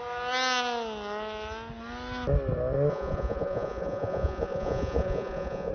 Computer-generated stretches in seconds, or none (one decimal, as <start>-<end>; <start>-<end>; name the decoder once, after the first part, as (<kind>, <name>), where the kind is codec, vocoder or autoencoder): 2.9-5.7 (vocoder, Vocos)

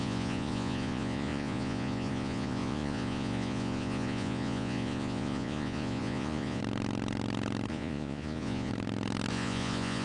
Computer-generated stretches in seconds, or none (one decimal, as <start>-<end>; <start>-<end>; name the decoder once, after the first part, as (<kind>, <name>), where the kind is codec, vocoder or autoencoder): 0.0-6.6 (vocoder, Vocos); 7.7-8.7; 9.3-10.0

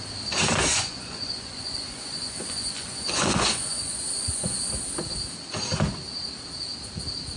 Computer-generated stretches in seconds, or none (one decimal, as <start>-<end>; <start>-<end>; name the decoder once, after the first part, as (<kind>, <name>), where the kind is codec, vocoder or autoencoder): 0.7-4.7 (vocoder, Vocos)

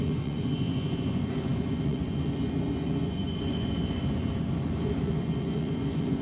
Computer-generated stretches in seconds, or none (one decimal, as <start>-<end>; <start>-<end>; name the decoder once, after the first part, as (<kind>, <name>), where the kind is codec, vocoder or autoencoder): 0.0-6.2 (vocoder, Vocos)